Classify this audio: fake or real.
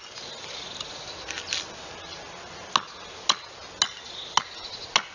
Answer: real